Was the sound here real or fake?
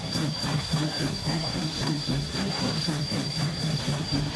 fake